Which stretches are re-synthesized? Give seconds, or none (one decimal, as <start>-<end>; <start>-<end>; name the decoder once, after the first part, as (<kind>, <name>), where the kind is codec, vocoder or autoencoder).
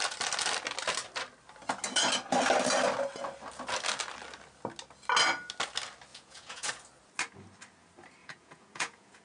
6.1-6.7 (vocoder, Vocos); 8.2-9.2